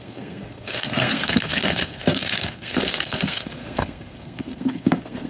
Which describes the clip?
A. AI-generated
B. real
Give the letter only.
A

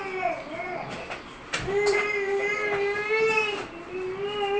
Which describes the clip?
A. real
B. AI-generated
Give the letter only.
A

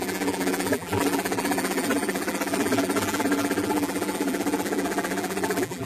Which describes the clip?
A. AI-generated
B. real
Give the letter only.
A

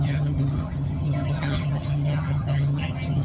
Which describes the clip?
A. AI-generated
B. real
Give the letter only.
A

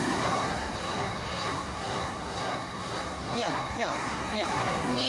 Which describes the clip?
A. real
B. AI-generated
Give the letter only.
B